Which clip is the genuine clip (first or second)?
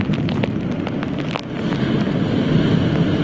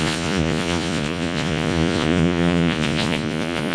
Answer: first